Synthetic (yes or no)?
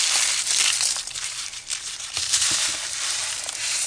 no